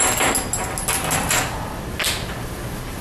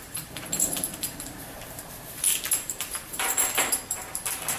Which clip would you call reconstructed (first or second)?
second